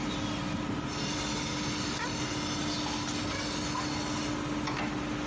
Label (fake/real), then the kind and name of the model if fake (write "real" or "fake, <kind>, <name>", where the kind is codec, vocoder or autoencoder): real